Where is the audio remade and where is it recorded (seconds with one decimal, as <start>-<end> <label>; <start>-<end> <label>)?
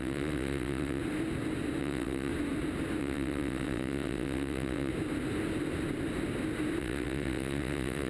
0.0-1.0 remade; 1.0-1.8 recorded; 1.8-2.3 remade; 2.3-3.0 recorded; 3.0-4.9 remade; 4.9-6.8 recorded; 6.8-8.1 remade